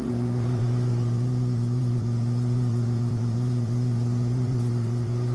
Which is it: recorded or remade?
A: remade